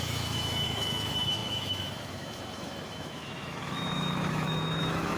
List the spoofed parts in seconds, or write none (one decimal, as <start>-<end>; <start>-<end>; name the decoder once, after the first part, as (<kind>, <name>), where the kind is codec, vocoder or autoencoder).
0.0-5.2 (autoencoder, DAC-VAE)